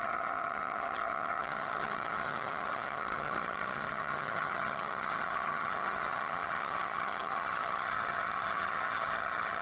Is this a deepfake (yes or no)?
yes